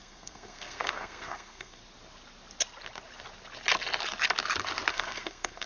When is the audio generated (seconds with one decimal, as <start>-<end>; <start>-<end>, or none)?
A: 0.0-1.8; 4.9-5.7